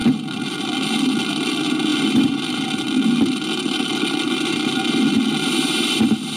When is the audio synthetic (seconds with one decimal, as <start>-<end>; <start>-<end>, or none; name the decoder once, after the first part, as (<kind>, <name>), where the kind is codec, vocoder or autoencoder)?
none